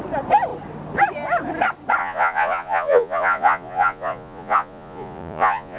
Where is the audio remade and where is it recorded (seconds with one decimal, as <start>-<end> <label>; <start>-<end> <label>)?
0.0-2.0 recorded; 2.0-5.8 remade